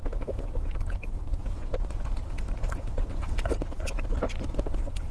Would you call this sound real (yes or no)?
yes